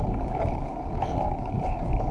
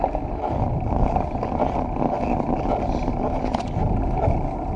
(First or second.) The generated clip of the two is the first